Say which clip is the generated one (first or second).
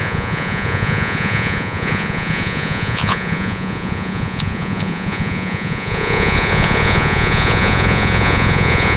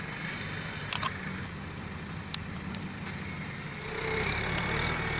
first